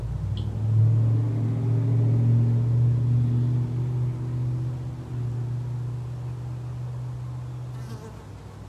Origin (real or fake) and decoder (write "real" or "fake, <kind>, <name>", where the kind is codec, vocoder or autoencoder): real